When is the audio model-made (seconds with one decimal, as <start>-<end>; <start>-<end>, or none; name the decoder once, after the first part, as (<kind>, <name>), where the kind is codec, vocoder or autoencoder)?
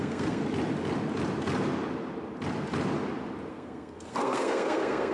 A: 0.0-0.4 (codec, SNAC); 3.5-5.1